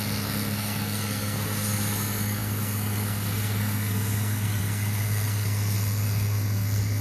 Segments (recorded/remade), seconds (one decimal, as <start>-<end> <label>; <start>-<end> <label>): 0.0-7.0 remade